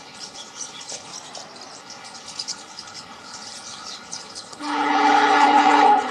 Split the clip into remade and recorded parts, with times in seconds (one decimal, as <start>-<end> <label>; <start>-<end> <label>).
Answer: 0.0-1.1 remade; 1.1-1.8 recorded; 1.8-6.1 remade